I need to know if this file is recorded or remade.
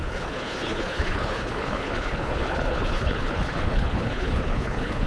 remade